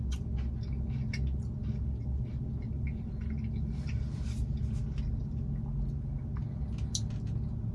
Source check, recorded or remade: recorded